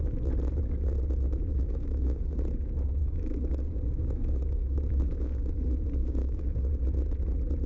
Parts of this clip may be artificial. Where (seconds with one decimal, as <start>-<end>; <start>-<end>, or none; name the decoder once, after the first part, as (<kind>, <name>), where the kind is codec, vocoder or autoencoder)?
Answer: 1.5-2.2 (codec, DAC); 3.0-5.5; 6.0-6.7